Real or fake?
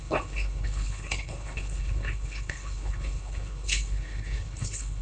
fake